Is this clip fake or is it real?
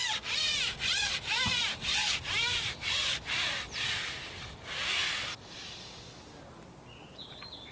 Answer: real